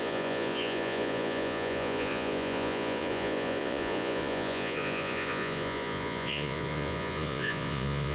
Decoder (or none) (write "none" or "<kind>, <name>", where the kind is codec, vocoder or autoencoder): vocoder, Vocos